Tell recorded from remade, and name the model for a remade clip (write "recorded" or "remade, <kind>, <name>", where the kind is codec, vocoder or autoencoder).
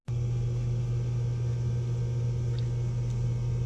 recorded